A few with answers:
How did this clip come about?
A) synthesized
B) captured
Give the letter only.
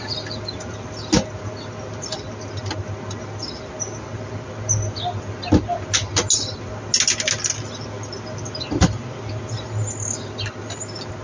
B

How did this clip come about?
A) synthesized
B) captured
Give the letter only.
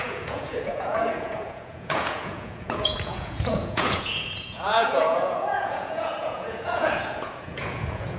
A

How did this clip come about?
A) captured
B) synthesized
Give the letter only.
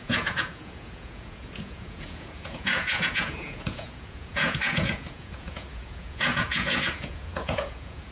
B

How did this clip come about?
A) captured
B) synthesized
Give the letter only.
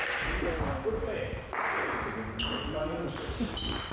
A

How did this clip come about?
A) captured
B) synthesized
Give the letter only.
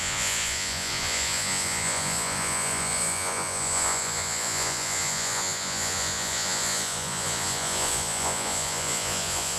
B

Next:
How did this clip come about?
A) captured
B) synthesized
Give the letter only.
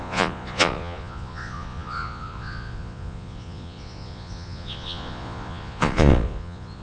B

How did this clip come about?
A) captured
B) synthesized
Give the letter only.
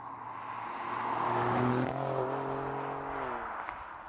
A